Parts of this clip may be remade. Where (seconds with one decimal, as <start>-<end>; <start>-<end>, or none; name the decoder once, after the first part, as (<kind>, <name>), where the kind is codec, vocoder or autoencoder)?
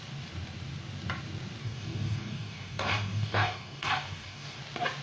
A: 1.6-4.6 (codec, DAC)